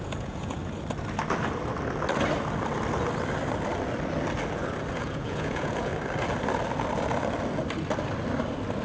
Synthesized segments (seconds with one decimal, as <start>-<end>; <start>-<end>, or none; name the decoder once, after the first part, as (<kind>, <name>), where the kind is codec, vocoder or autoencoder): 0.0-0.6 (vocoder, Vocos); 4.9-5.9